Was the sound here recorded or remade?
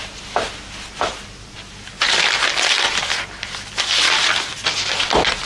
recorded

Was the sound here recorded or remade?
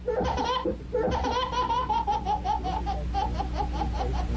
recorded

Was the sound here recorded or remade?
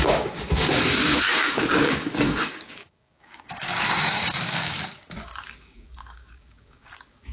remade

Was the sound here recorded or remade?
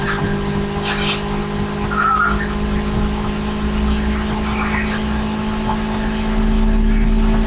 recorded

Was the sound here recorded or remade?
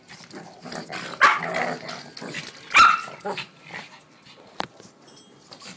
recorded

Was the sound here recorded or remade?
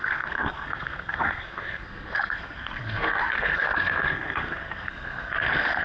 remade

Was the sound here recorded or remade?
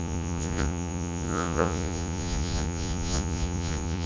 remade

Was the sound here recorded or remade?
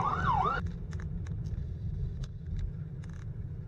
recorded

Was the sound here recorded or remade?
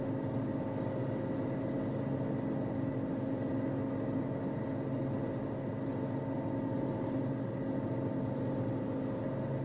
recorded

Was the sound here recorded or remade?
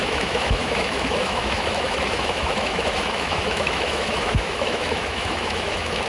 remade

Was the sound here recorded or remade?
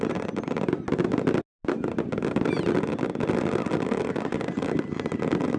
recorded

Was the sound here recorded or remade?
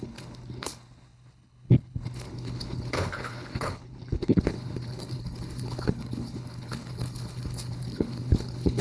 remade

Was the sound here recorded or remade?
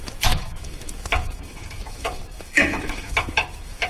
remade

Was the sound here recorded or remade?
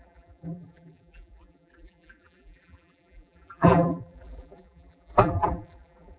remade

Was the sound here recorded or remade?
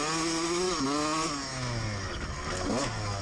recorded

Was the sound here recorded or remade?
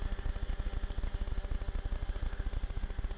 recorded